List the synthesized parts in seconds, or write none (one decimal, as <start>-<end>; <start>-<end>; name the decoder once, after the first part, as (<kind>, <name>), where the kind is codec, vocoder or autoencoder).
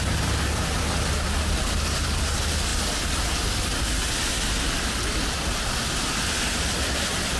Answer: none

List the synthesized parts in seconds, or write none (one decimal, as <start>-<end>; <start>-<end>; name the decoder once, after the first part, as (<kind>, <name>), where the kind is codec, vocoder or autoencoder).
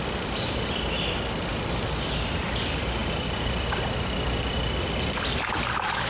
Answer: 0.0-1.5 (vocoder, BigVGAN v2); 2.2-6.1